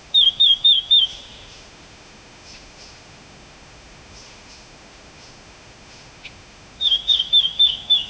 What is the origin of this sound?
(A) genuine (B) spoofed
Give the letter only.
B